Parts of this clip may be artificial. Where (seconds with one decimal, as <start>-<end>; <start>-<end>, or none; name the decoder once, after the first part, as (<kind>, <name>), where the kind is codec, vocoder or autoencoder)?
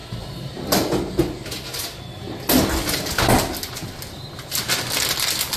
none